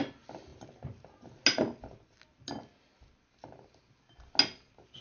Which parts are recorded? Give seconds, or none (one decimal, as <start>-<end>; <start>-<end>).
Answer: 0.0-5.0